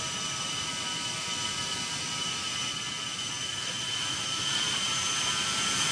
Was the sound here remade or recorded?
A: recorded